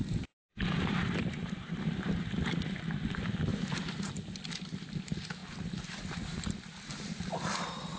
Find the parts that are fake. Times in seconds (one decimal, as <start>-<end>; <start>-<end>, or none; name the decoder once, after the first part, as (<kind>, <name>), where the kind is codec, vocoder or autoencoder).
0.0-2.8 (vocoder, BigVGAN v2); 3.5-4.2; 5.4-7.2